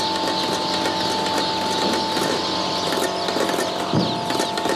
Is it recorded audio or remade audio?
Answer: recorded